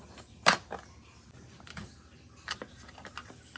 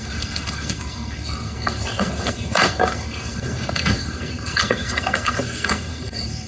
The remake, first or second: second